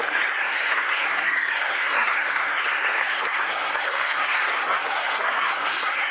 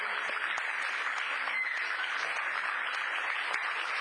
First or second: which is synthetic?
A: first